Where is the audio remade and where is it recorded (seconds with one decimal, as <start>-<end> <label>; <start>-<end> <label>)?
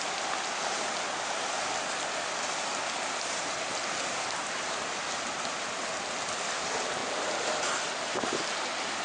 0.0-9.0 recorded